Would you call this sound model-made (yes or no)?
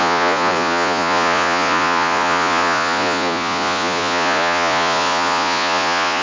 yes